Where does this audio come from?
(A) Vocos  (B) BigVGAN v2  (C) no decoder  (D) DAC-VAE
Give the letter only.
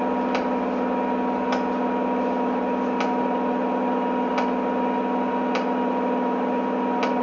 C